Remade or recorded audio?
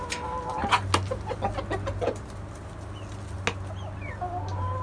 recorded